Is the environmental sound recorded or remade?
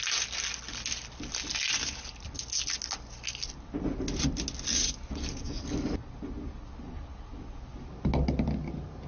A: recorded